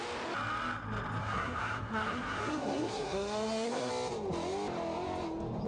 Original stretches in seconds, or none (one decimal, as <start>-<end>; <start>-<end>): 0.0-1.2; 3.9-5.7

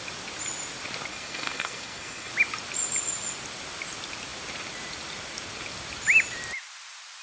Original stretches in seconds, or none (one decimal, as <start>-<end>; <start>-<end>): 0.0-1.1; 2.3-7.2